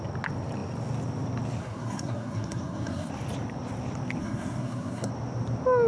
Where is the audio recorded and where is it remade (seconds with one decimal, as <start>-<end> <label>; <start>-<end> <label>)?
0.0-1.6 recorded; 1.6-3.1 remade; 3.1-4.2 recorded; 4.2-5.1 remade; 5.1-5.9 recorded